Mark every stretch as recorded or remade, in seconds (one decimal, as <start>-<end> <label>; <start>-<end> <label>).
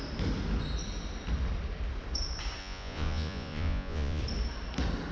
0.0-2.6 recorded; 2.6-4.2 remade; 4.2-5.1 recorded